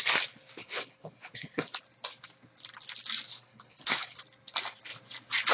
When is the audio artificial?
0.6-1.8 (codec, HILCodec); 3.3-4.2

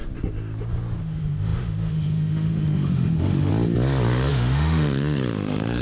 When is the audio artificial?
1.0-3.5 (autoencoder, DAC-VAE); 4.3-5.8

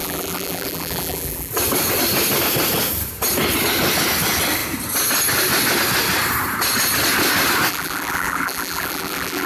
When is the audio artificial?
0.0-1.5 (vocoder, BigVGAN v2); 7.7-9.5